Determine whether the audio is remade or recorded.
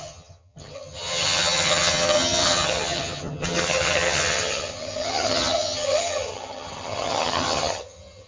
remade